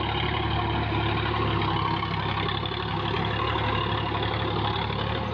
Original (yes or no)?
yes